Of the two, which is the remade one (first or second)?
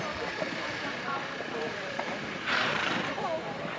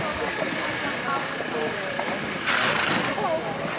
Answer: first